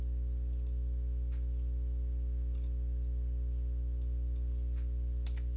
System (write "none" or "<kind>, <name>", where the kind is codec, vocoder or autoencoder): none